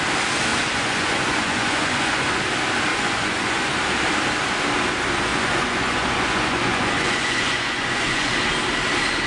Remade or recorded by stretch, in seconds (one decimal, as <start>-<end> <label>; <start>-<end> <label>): 0.0-0.5 recorded; 0.5-2.4 remade; 2.4-2.9 recorded; 2.9-3.7 remade; 3.7-5.3 recorded; 5.3-8.3 remade; 8.3-9.3 recorded